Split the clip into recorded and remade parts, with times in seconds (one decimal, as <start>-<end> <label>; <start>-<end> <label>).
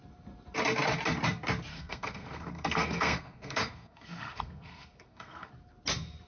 0.0-1.7 recorded; 1.7-5.5 remade; 5.5-6.3 recorded